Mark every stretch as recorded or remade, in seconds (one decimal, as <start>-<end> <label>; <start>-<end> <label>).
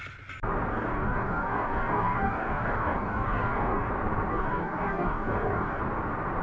0.0-0.7 recorded; 0.7-3.9 remade; 3.9-4.3 recorded; 4.3-5.8 remade; 5.8-6.4 recorded